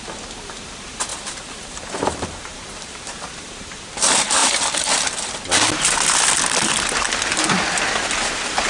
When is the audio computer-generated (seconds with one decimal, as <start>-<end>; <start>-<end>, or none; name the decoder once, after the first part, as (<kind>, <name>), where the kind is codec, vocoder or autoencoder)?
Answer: 1.1-3.7 (vocoder, BigVGAN v2); 4.4-5.3